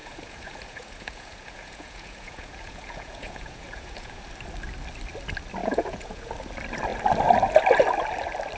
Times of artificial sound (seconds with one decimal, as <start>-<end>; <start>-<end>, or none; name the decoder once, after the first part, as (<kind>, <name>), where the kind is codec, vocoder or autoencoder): 0.0-4.2 (vocoder, Vocos); 5.6-6.3

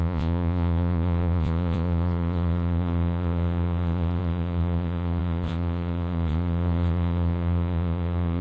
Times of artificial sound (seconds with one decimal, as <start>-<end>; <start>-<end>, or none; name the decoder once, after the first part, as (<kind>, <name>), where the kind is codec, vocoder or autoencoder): 0.0-8.4 (vocoder, Vocos)

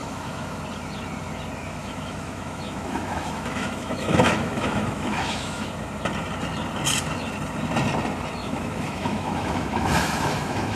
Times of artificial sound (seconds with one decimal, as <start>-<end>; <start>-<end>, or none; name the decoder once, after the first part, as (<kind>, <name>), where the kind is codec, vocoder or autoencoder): 0.0-0.6 (autoencoder, DAC-VAE); 1.8-5.7; 8.4-10.8

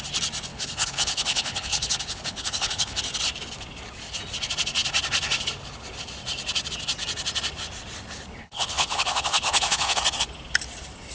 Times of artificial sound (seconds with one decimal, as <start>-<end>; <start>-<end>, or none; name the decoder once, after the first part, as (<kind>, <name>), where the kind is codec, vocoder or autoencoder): 0.5-3.0 (codec, HILCodec); 8.4-10.0

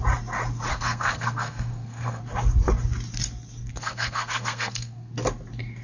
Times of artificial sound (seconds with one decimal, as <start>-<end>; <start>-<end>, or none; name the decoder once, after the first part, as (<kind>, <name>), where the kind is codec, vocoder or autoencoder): 0.7-2.2 (codec, SNAC); 3.7-5.1

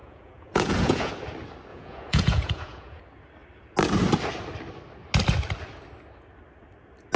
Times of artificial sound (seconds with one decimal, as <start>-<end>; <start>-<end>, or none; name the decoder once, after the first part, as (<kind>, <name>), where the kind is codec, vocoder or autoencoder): 0.0-1.1 (vocoder, Vocos); 1.7-3.0

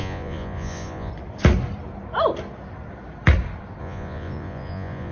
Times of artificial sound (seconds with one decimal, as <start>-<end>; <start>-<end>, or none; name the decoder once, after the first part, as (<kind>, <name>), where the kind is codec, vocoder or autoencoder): 0.0-1.1 (vocoder, Vocos); 3.8-5.1